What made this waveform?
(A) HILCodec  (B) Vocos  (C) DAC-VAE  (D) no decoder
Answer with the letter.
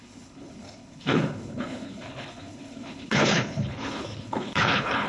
A